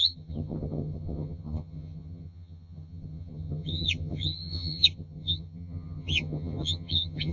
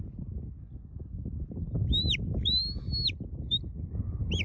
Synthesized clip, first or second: first